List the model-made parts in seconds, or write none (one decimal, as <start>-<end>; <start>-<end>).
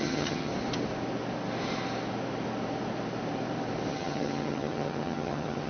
0.0-0.5; 3.9-5.7